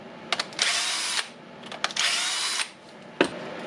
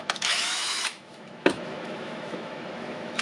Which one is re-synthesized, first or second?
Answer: second